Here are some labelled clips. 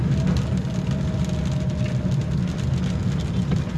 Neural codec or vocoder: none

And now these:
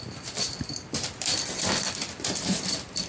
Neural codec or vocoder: vocoder, BigVGAN v2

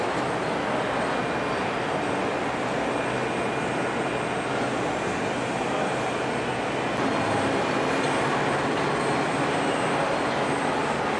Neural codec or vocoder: none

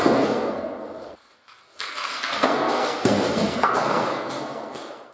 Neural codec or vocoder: codec, SNAC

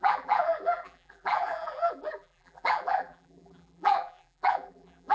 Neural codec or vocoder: vocoder, BigVGAN v2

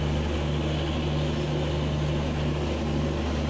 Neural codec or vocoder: none